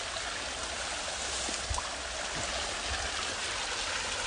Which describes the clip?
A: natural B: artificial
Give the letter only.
A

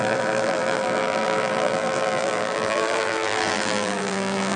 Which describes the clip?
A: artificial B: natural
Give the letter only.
A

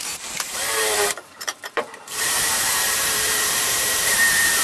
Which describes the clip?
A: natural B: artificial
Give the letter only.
B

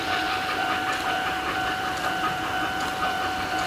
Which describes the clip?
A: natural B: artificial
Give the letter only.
B